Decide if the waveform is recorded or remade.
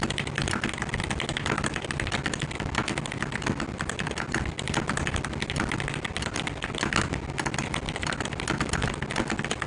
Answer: recorded